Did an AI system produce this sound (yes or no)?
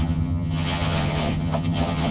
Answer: yes